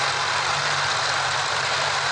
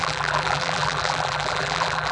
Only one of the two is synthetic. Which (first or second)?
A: second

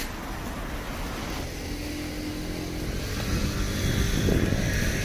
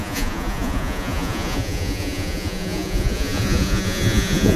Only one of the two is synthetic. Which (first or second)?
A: second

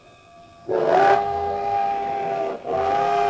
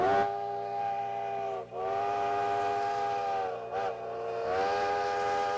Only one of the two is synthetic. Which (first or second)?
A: first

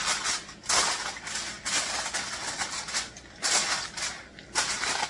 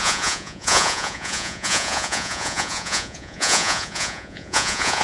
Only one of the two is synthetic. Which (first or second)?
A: second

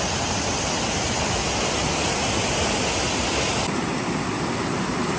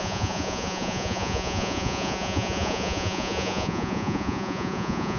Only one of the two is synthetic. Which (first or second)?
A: second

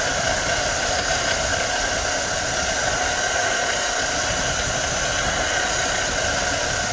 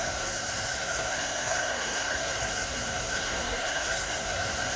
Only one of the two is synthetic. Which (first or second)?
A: second